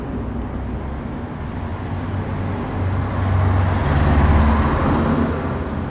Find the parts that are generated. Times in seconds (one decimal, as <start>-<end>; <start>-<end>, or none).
none